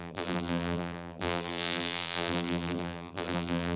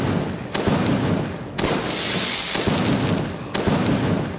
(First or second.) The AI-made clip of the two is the first